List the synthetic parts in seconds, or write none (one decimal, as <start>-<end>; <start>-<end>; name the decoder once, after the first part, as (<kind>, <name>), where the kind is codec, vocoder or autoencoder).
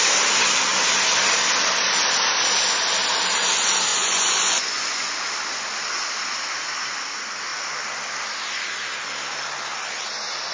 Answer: 3.9-5.1 (vocoder, Vocos)